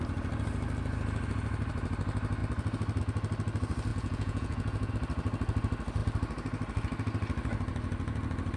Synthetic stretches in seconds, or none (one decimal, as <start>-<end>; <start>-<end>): 3.9-4.9